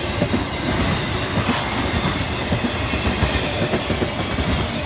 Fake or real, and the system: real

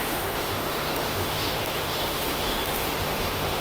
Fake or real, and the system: fake, autoencoder, DAC-VAE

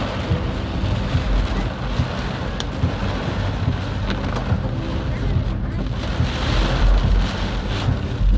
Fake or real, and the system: real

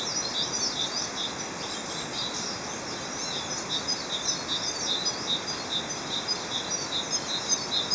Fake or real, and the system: real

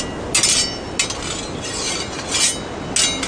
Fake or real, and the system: real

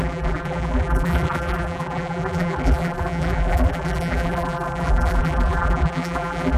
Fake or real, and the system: fake, vocoder, BigVGAN v2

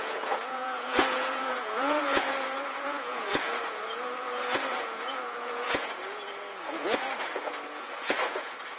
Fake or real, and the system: fake, vocoder, Vocos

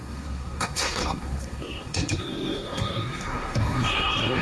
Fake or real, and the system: fake, codec, SNAC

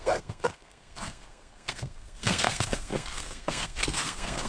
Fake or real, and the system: fake, codec, SNAC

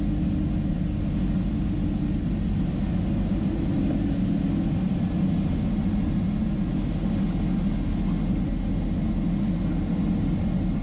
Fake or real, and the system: real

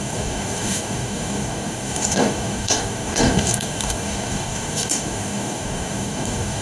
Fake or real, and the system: fake, codec, DAC